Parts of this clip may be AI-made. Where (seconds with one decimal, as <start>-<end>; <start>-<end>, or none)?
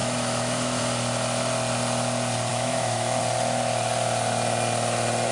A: 0.0-0.8; 2.5-3.2